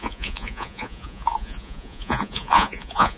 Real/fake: fake